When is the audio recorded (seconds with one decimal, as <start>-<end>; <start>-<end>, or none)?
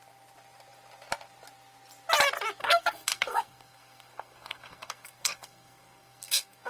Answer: 0.0-2.6